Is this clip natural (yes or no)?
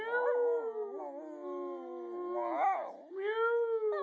yes